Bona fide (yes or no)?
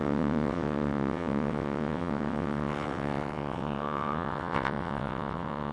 no